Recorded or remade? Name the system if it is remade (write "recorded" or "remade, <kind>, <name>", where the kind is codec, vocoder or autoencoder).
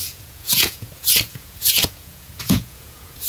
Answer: remade, vocoder, Vocos